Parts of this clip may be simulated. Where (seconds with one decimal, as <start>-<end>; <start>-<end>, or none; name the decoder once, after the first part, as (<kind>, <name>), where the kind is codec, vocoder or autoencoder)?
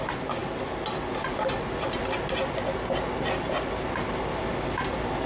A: none